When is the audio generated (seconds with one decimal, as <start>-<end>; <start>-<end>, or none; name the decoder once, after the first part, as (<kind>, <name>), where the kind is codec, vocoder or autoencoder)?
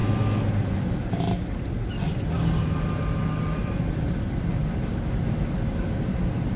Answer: none